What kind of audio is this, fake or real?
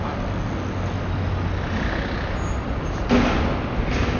real